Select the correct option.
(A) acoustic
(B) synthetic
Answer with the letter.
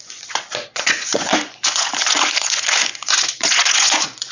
B